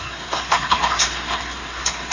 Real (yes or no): no